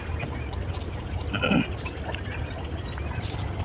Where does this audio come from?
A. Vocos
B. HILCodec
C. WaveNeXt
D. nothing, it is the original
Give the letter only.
D